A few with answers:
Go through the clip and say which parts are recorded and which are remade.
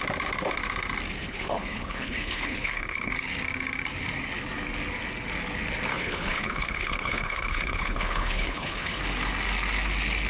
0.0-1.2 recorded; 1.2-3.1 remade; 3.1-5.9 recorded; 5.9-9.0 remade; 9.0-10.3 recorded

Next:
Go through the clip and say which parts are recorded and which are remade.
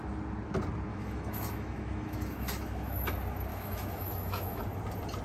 0.0-0.9 recorded; 0.9-3.1 remade; 3.1-3.5 recorded; 3.5-4.6 remade; 4.6-5.2 recorded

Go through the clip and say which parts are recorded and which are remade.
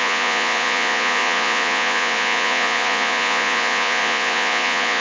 0.0-5.0 remade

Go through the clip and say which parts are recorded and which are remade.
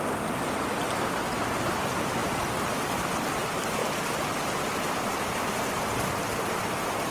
0.0-7.1 recorded